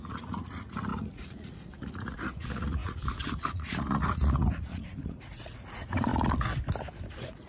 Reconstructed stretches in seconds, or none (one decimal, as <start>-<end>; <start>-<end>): 0.0-6.1; 7.1-7.5